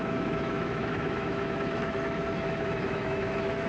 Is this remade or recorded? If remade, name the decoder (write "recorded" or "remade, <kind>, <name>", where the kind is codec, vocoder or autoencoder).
remade, autoencoder, DAC-VAE